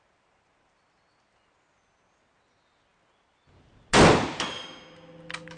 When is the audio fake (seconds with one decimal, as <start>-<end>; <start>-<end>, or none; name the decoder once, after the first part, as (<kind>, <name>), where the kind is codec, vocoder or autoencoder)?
none